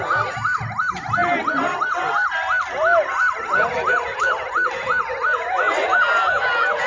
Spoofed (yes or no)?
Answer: no